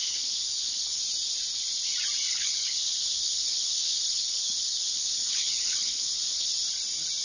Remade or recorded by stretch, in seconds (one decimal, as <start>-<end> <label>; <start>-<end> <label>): 0.0-1.0 remade; 1.0-2.3 recorded; 2.3-6.5 remade; 6.5-7.2 recorded